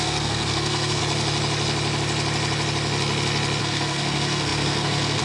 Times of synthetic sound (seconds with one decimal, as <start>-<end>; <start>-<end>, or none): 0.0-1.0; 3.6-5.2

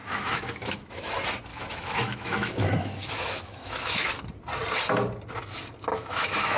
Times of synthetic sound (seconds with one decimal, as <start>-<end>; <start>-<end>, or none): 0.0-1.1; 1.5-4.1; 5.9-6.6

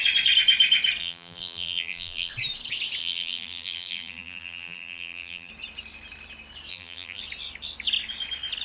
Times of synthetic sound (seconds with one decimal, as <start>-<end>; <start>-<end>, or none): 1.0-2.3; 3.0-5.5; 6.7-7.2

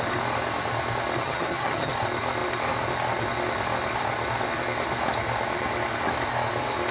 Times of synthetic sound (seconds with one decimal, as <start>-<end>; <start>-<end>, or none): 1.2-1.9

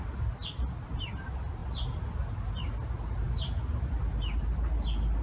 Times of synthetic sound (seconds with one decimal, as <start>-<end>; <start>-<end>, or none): none

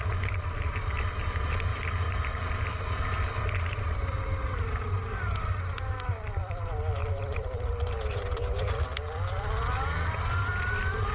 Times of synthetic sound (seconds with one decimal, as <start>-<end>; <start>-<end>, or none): 1.7-2.5; 7.0-8.6

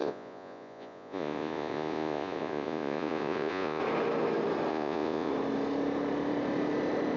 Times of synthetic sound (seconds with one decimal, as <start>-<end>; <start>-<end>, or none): 0.0-3.8; 4.7-5.3